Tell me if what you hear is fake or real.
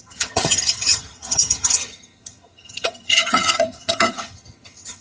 fake